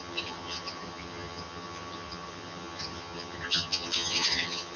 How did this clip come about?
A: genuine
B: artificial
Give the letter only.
B